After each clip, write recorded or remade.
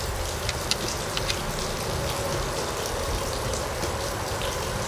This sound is recorded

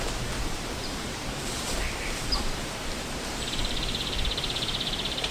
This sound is remade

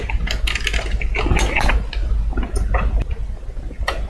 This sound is recorded